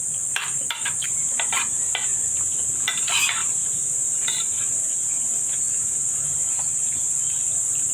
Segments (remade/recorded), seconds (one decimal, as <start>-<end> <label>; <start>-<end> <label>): 0.0-7.9 recorded